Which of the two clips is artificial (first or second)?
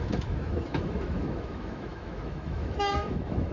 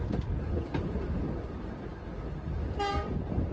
first